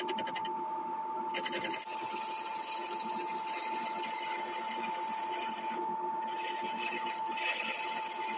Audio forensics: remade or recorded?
recorded